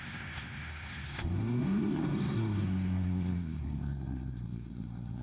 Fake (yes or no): yes